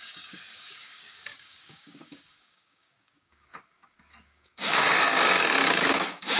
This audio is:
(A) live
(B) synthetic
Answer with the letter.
B